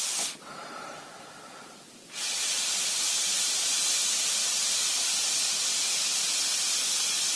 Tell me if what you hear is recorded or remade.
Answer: recorded